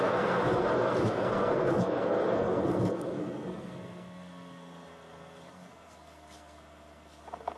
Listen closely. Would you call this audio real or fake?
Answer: fake